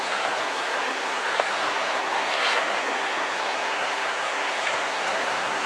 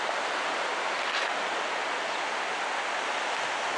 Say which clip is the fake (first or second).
first